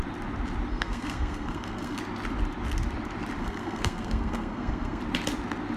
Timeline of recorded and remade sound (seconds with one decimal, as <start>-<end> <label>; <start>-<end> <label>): 0.0-0.7 recorded; 0.7-2.0 remade; 2.0-3.4 recorded; 3.4-5.0 remade; 5.0-5.8 recorded